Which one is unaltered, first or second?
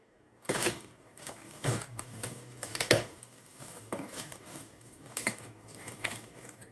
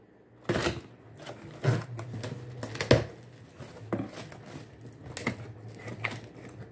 second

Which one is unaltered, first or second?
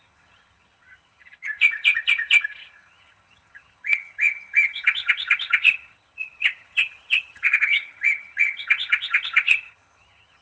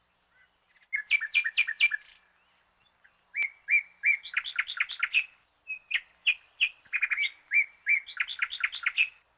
second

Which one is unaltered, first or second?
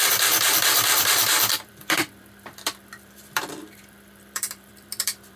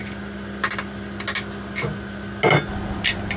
second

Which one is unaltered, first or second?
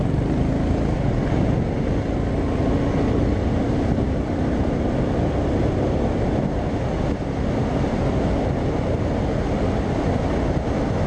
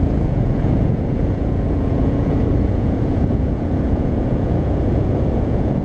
first